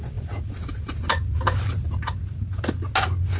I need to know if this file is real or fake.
real